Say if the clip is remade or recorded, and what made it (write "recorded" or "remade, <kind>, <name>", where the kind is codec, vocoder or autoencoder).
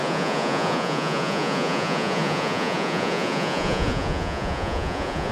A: remade, vocoder, Vocos